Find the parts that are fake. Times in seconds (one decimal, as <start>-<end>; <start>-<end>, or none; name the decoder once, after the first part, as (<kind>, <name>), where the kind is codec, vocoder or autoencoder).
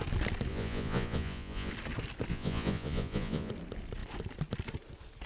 0.5-1.7 (vocoder, Vocos); 2.3-3.5